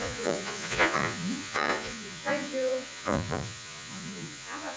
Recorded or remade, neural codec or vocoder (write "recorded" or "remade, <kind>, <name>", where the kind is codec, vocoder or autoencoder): remade, vocoder, Vocos